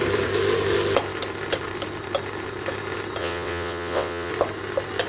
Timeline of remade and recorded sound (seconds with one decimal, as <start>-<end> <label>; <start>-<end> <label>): 0.0-3.2 recorded; 3.2-4.3 remade; 4.3-5.1 recorded